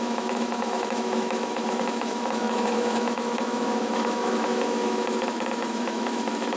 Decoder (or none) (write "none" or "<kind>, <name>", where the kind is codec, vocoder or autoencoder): autoencoder, DAC-VAE